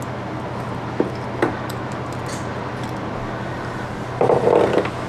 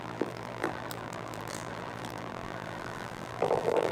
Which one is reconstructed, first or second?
second